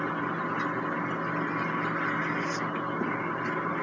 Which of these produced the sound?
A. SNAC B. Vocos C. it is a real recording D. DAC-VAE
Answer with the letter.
C